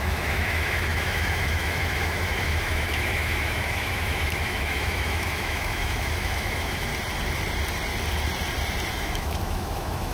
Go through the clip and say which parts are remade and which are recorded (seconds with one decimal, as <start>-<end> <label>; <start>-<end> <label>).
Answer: 0.0-6.9 remade; 6.9-8.9 recorded; 8.9-10.1 remade